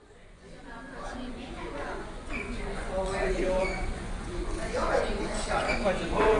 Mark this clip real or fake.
fake